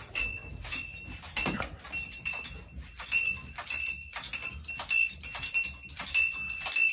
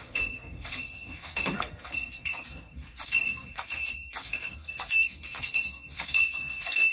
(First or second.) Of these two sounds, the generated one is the second